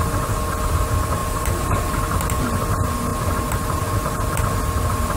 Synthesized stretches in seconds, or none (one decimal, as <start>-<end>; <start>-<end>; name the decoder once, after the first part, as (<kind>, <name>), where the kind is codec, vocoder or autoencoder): 1.2-2.0 (vocoder, BigVGAN v2)